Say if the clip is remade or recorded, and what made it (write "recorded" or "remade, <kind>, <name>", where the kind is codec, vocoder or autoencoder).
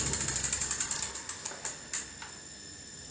recorded